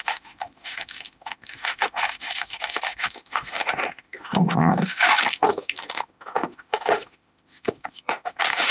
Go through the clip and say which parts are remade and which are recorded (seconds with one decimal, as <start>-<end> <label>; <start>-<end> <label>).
0.0-8.7 remade